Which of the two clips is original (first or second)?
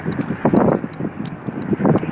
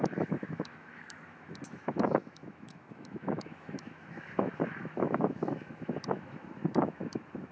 first